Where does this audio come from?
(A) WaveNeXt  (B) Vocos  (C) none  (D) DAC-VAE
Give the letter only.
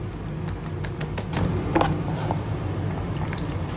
C